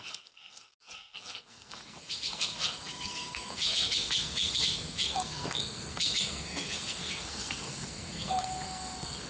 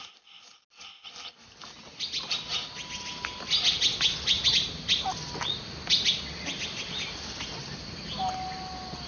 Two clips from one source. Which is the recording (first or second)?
second